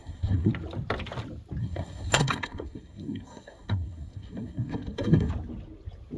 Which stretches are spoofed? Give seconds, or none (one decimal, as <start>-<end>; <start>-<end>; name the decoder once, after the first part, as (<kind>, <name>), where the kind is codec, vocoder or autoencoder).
0.0-0.5 (codec, SNAC); 1.6-5.3